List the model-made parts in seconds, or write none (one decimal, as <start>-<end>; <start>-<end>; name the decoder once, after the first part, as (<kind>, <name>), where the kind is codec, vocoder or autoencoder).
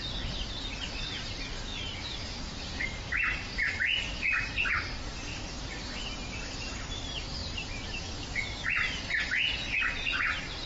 1.7-4.7 (vocoder, BigVGAN v2); 7.4-8.3